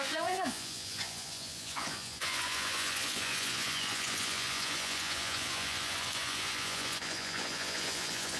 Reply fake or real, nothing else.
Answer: fake